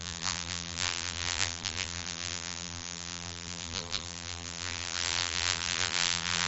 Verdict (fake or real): fake